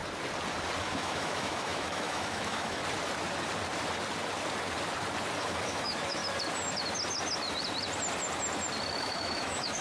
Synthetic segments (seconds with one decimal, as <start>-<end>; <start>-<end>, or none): 0.8-2.8; 5.4-6.2; 9.0-9.8